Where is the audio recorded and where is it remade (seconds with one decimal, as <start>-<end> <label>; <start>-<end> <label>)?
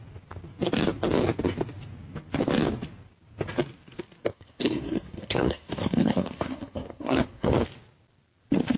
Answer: 0.0-4.3 recorded; 4.3-7.5 remade; 7.5-8.8 recorded